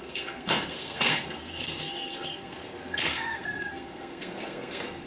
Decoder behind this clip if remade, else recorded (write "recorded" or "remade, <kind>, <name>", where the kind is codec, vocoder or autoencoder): remade, codec, SNAC